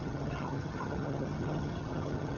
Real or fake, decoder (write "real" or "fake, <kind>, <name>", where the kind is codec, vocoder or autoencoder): fake, vocoder, HiFi-GAN